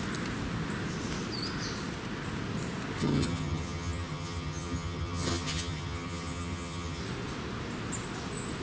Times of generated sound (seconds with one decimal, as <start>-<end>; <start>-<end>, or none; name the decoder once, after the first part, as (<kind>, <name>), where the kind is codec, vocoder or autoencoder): 3.0-7.0 (vocoder, HiFi-GAN)